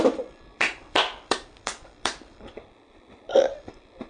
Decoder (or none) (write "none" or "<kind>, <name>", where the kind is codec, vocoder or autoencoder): vocoder, BigVGAN v2